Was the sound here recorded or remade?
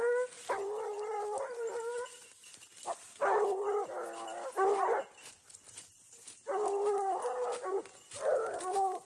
recorded